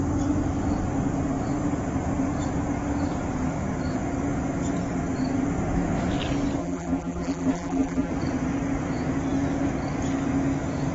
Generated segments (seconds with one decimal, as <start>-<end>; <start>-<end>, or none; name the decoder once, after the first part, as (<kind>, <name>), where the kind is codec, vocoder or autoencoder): 6.6-8.1 (vocoder, BigVGAN v2)